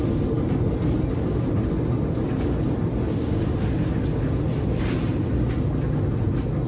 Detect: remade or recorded recorded